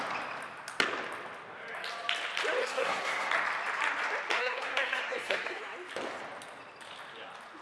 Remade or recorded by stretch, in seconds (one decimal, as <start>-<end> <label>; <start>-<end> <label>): 0.0-2.6 recorded; 2.6-3.3 remade; 3.3-4.3 recorded; 4.3-5.6 remade; 5.6-7.6 recorded